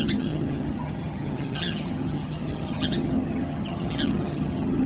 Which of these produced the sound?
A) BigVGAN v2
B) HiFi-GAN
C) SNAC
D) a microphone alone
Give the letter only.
B